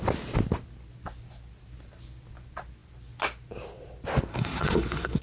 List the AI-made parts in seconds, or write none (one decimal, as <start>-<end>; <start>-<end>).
4.3-5.2